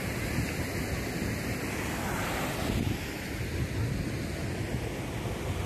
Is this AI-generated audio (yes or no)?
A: no